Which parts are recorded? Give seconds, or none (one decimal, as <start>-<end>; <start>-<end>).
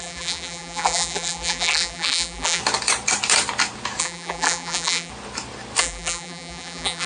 2.6-4.0; 5.1-5.8